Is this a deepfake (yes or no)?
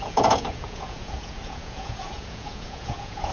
yes